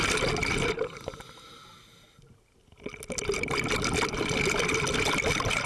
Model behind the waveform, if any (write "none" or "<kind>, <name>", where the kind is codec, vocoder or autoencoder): none